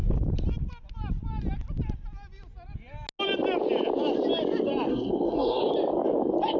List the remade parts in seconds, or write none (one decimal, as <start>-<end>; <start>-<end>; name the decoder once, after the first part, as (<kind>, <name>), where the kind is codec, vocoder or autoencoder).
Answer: 4.9-5.6 (codec, SNAC)